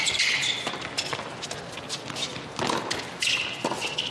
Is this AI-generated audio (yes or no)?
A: no